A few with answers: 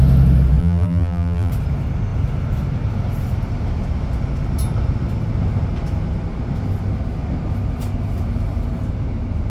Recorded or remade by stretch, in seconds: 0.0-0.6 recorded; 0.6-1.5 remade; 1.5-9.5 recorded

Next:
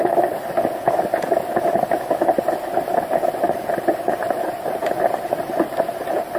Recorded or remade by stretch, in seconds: 0.0-4.2 recorded; 4.2-6.4 remade

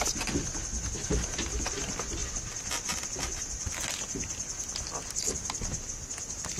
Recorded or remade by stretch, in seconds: 0.0-2.2 recorded; 2.2-3.1 remade; 3.1-6.6 recorded

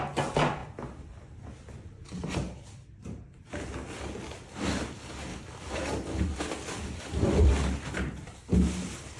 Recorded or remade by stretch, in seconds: 0.0-5.3 recorded; 5.3-7.5 remade; 7.5-9.2 recorded

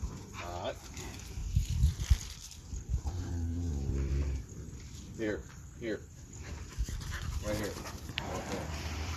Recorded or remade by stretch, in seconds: 0.0-9.2 remade

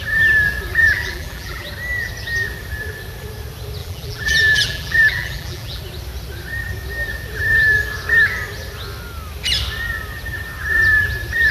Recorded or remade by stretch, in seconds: 0.0-0.8 recorded; 0.8-1.7 remade; 1.7-3.8 recorded; 3.8-5.8 remade; 5.8-11.5 recorded

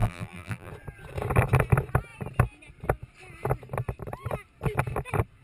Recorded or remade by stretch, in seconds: 0.0-0.7 remade; 0.7-5.4 recorded